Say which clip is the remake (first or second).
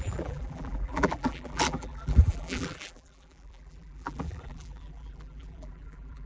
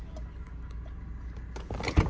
first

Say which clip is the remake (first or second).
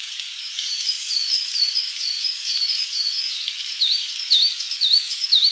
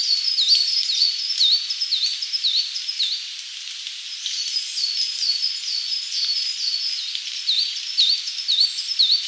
first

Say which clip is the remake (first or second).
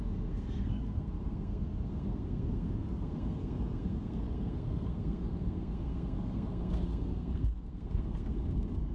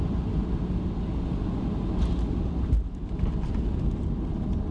first